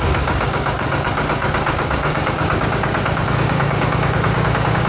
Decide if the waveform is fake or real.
fake